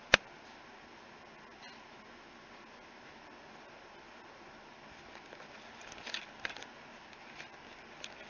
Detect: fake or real real